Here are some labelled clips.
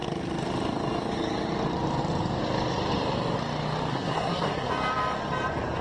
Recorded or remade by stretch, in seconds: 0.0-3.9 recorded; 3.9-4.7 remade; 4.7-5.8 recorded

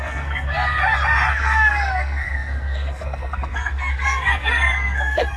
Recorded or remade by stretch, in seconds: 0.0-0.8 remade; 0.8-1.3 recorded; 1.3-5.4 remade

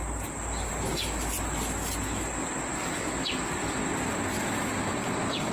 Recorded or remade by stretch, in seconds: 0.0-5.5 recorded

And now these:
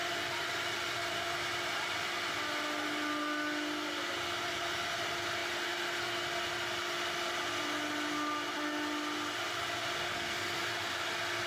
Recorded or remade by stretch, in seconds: 0.0-10.1 recorded; 10.1-10.6 remade; 10.6-11.5 recorded